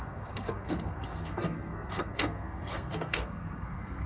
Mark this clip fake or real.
fake